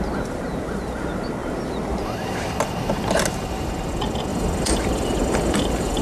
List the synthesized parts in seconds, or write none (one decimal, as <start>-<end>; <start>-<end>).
4.3-6.0